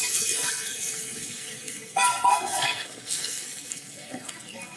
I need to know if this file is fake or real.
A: fake